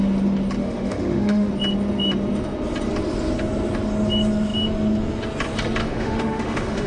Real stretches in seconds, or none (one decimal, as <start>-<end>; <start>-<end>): 0.0-0.6; 1.5-5.8

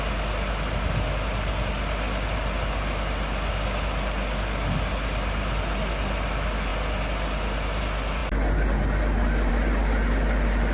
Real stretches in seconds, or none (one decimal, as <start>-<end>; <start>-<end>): 0.0-10.7

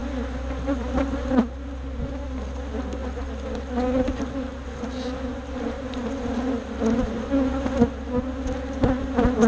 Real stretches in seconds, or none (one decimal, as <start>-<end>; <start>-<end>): 0.0-9.5

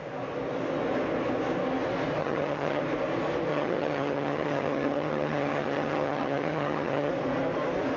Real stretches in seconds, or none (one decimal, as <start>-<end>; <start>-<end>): 0.0-2.2; 2.8-3.5; 7.1-8.0

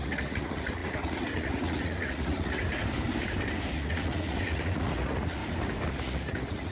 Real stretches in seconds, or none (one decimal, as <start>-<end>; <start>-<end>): 2.6-3.7; 5.4-5.9

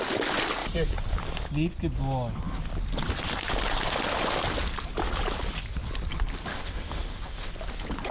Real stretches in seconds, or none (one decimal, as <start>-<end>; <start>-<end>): 0.0-6.5; 7.5-8.1